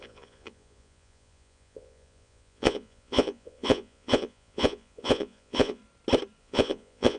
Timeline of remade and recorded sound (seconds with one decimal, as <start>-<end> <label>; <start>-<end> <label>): 0.0-5.8 remade; 5.8-6.4 recorded; 6.4-7.2 remade